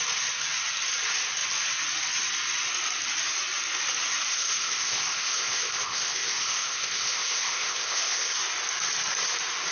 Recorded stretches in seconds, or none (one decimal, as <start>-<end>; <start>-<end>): 0.0-4.3; 8.4-9.7